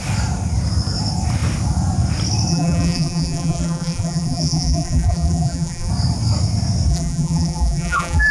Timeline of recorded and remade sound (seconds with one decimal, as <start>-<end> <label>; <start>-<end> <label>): 0.0-2.5 recorded; 2.5-5.9 remade; 5.9-6.9 recorded; 6.9-8.3 remade